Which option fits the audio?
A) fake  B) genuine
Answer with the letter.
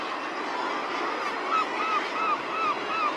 B